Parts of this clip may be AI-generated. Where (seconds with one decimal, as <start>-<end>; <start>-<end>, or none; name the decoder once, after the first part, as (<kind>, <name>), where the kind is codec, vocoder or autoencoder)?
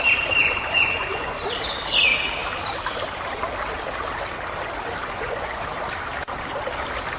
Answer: 0.4-1.4 (vocoder, Vocos); 5.0-5.6